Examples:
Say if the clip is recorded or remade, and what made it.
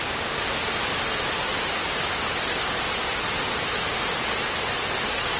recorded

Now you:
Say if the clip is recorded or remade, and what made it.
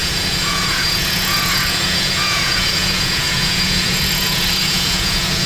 remade, vocoder, Vocos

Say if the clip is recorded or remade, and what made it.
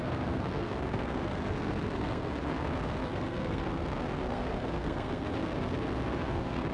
remade, codec, SNAC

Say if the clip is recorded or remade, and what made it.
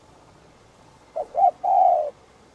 remade, vocoder, Vocos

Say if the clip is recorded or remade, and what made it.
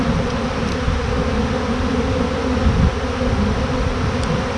recorded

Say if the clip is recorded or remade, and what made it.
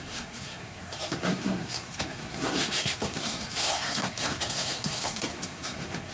remade, codec, SNAC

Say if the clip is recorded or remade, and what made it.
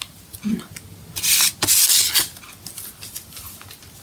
recorded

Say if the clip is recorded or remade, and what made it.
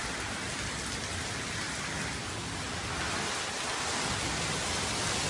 recorded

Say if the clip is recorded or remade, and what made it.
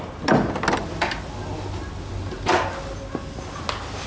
recorded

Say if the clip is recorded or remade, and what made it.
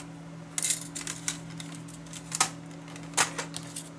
recorded